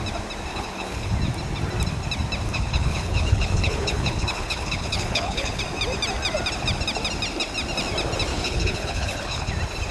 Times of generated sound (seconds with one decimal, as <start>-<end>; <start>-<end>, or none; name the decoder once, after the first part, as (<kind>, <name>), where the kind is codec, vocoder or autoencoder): 0.5-1.1 (codec, HILCodec); 2.5-5.6; 8.3-9.5